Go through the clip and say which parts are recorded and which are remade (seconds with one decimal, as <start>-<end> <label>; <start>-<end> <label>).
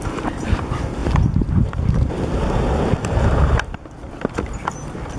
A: 0.0-1.0 recorded; 1.0-4.1 remade; 4.1-5.2 recorded